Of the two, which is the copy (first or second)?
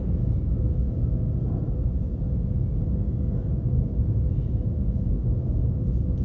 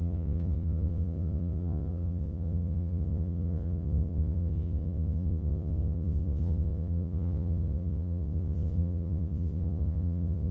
second